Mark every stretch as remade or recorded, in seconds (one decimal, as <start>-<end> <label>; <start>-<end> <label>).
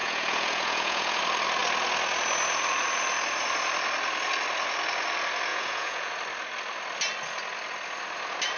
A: 0.0-1.2 remade; 1.2-5.5 recorded; 5.5-6.1 remade; 6.1-8.6 recorded